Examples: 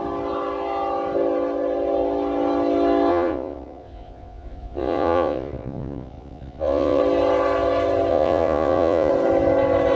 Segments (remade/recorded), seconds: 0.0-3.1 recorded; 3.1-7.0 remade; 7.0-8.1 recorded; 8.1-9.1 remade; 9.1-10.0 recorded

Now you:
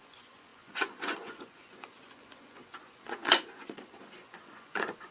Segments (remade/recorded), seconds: 0.0-5.1 remade

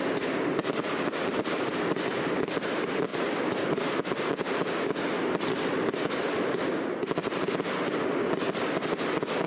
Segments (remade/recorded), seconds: 0.0-9.5 recorded

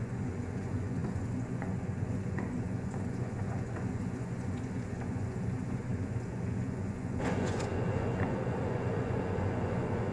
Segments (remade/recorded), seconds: 0.0-10.1 remade

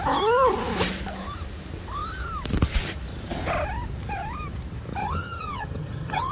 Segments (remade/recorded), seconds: 0.0-5.0 recorded; 5.0-6.3 remade

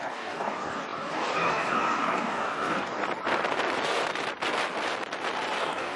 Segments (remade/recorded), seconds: 0.0-3.0 remade; 3.0-5.6 recorded; 5.6-6.0 remade

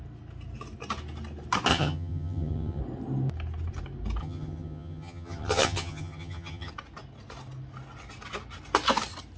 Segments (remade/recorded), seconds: 0.0-1.7 recorded; 1.7-2.8 remade; 2.8-4.2 recorded; 4.2-6.7 remade; 6.7-9.4 recorded